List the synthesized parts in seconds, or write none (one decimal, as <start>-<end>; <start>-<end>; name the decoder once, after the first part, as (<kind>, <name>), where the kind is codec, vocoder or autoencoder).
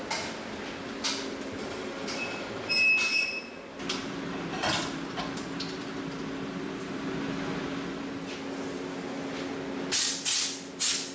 none